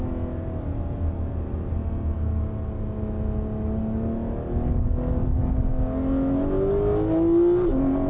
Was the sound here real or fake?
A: real